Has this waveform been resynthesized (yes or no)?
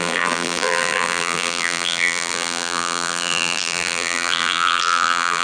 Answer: yes